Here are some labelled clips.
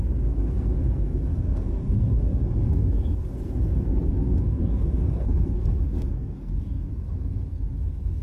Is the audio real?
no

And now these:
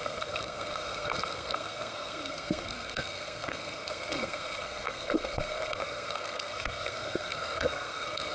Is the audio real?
no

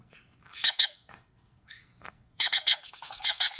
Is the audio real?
no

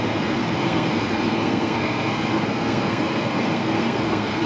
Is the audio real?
no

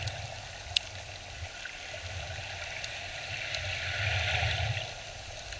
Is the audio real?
yes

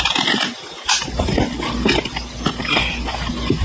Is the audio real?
yes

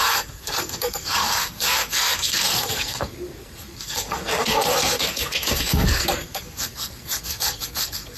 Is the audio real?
no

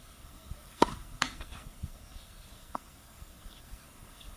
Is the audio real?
no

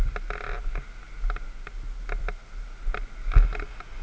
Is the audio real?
yes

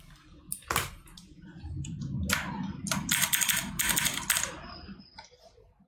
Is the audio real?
yes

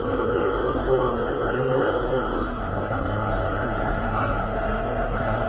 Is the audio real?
no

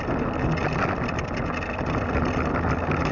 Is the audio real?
yes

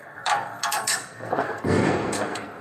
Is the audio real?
no